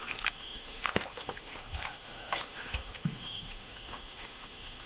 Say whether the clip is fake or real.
fake